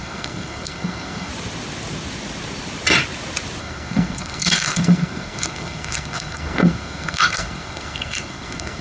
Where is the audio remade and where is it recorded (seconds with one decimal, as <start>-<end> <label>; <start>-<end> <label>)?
0.0-1.3 remade; 1.3-3.6 recorded; 3.6-8.8 remade